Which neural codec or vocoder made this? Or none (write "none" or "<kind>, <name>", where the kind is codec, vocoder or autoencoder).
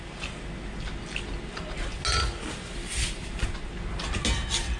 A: none